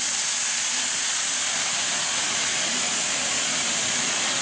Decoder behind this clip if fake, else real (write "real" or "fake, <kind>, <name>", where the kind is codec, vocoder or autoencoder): real